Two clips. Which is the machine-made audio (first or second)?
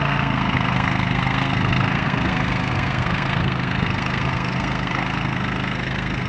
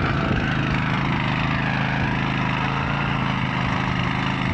first